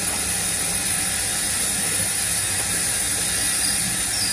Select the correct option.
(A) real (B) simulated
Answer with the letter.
A